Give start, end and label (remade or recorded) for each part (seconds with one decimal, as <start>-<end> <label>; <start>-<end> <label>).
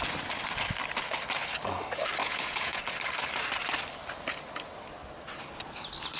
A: 0.0-2.2 recorded; 2.2-2.8 remade; 2.8-6.2 recorded